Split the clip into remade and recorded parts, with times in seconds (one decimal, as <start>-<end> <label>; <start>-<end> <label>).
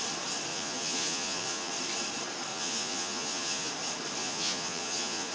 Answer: 0.0-0.5 recorded; 0.5-1.7 remade; 1.7-2.5 recorded; 2.5-3.7 remade; 3.7-4.2 recorded; 4.2-5.3 remade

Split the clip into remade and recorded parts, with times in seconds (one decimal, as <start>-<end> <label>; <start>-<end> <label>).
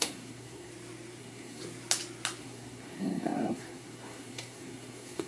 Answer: 0.0-0.7 remade; 0.7-1.2 recorded; 1.2-1.6 remade; 1.6-2.4 recorded; 2.4-5.3 remade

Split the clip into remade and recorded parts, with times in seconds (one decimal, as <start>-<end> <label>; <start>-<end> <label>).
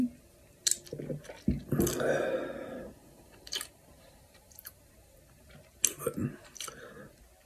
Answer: 0.0-3.0 recorded; 3.0-5.2 remade; 5.2-7.5 recorded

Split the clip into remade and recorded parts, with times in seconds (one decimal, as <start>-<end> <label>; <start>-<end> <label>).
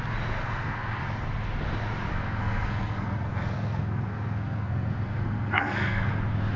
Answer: 0.0-0.4 recorded; 0.4-1.0 remade; 1.0-2.1 recorded; 2.1-6.1 remade; 6.1-6.6 recorded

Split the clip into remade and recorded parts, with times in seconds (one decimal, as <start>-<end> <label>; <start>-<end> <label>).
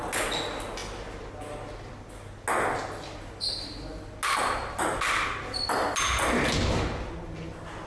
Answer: 0.0-7.9 recorded